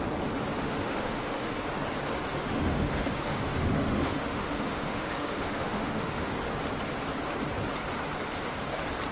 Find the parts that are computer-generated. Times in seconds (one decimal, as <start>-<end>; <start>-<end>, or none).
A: 0.6-1.6; 2.4-6.3